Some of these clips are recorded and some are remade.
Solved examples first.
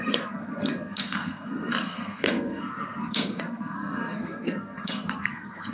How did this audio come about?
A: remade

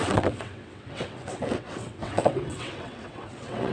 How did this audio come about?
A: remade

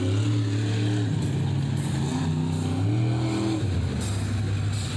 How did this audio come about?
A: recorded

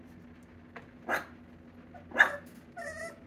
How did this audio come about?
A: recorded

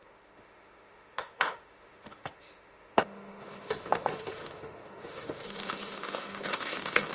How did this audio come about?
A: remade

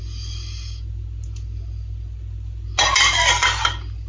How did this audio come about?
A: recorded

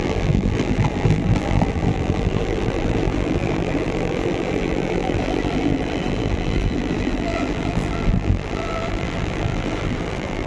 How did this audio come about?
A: remade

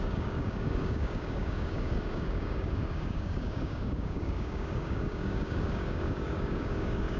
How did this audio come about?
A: remade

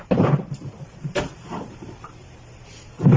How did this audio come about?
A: remade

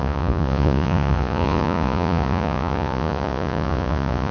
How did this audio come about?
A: remade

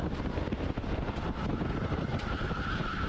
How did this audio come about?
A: recorded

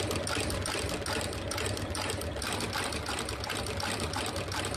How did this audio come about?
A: recorded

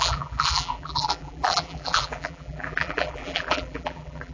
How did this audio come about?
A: remade